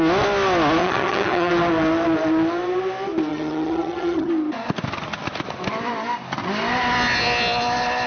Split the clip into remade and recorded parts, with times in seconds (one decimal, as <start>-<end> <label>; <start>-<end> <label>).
0.0-0.8 recorded; 0.8-1.5 remade; 1.5-3.3 recorded; 3.3-4.3 remade; 4.3-8.1 recorded